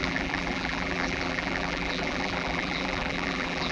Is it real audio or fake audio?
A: fake